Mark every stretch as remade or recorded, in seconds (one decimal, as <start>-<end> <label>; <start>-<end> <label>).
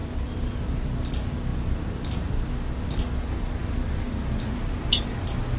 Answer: 0.0-5.6 recorded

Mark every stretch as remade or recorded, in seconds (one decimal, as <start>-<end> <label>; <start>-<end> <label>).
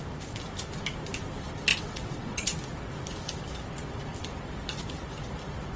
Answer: 0.0-1.7 recorded; 1.7-2.5 remade; 2.5-5.8 recorded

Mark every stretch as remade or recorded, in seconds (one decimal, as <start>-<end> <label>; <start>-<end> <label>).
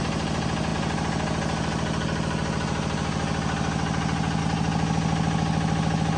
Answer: 0.0-6.2 recorded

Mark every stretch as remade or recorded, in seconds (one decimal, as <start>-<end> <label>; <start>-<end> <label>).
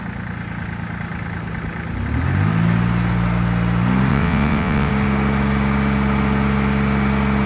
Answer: 0.0-4.1 recorded; 4.1-4.9 remade; 4.9-7.5 recorded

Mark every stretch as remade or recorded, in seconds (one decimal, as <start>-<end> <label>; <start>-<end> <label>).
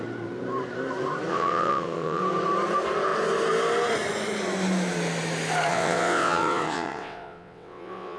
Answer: 0.0-1.3 recorded; 1.3-2.2 remade; 2.2-5.7 recorded; 5.7-8.2 remade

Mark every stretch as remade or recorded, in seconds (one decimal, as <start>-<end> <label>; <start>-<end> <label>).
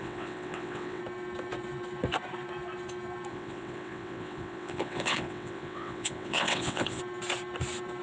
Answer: 0.0-1.0 remade; 1.0-3.3 recorded; 3.3-7.0 remade; 7.0-8.0 recorded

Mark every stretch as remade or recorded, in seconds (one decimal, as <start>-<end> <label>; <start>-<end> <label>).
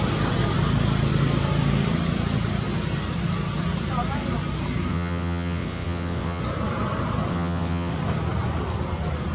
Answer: 0.0-4.9 recorded; 4.9-6.4 remade; 6.4-7.3 recorded; 7.3-7.9 remade; 7.9-9.3 recorded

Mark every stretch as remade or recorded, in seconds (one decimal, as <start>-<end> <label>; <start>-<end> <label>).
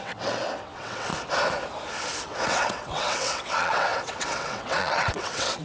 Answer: 0.0-1.1 remade; 1.1-2.2 recorded; 2.2-5.6 remade